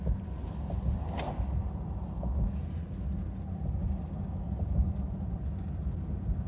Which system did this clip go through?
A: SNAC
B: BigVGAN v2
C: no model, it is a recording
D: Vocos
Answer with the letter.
C